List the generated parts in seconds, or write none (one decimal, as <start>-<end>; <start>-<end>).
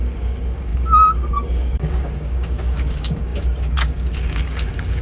0.0-5.0